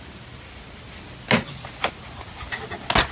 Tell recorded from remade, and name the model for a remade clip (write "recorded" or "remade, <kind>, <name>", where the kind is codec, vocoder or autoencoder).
recorded